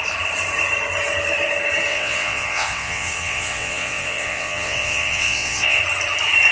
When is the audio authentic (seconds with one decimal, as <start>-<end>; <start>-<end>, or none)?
0.0-1.9; 5.8-6.5